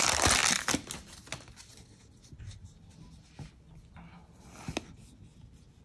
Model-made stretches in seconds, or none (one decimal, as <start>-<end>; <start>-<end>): none